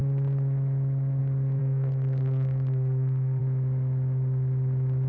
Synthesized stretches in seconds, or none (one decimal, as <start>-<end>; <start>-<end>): 1.6-3.4